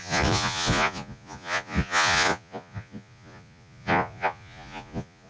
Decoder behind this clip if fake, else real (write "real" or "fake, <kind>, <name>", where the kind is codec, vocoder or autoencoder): fake, vocoder, Vocos